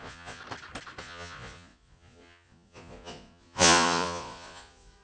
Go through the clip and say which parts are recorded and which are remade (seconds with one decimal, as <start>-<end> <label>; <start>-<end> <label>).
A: 0.0-0.4 remade; 0.4-1.0 recorded; 1.0-5.0 remade